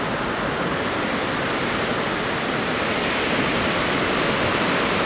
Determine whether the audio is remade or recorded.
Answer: recorded